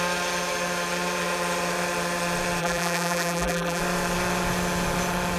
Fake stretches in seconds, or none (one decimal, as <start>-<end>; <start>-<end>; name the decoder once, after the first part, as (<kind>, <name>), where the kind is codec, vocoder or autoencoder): 2.6-3.8 (vocoder, BigVGAN v2)